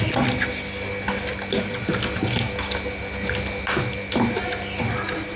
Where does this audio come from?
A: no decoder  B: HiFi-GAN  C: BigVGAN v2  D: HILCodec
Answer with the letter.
A